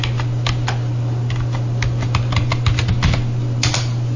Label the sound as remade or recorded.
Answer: recorded